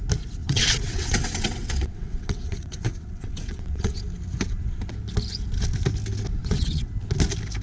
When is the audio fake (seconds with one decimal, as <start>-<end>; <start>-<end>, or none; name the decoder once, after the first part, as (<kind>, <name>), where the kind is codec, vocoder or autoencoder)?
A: 0.4-4.0 (vocoder, WaveNeXt); 6.4-6.9